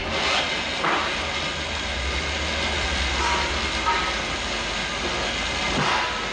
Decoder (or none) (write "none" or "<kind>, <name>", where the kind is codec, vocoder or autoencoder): none